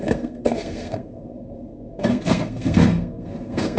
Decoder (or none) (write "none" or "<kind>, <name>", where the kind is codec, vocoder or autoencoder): codec, SNAC